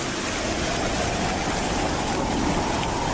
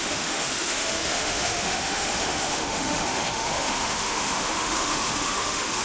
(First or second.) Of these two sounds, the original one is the first